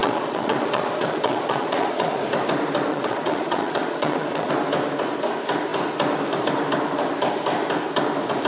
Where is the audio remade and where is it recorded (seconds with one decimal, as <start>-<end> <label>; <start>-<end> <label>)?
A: 0.0-2.2 remade; 2.2-2.9 recorded; 2.9-4.5 remade; 4.5-8.5 recorded